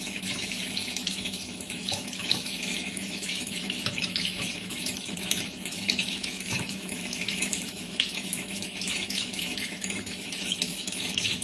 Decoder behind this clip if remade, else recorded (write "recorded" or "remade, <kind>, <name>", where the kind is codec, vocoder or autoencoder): remade, autoencoder, DAC-VAE